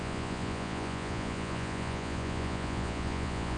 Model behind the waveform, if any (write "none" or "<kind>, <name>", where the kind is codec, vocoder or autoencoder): vocoder, Vocos